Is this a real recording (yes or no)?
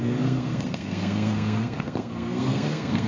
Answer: no